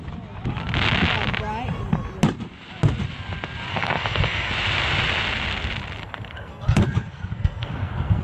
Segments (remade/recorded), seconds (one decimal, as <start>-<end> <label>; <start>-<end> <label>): 0.0-3.7 recorded; 3.7-4.5 remade; 4.5-6.0 recorded; 6.0-8.2 remade